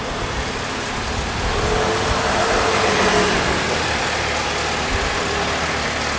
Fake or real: real